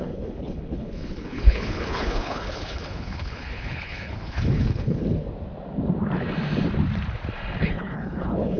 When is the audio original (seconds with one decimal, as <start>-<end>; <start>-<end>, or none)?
5.0-7.6